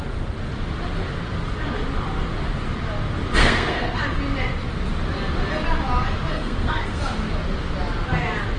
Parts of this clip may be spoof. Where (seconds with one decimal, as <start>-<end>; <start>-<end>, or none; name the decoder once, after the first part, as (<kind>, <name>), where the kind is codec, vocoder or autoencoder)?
3.4-4.0 (codec, SNAC); 6.3-7.0